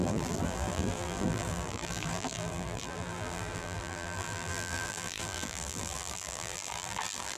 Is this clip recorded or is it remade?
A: remade